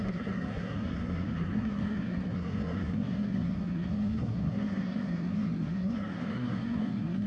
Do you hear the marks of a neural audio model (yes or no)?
yes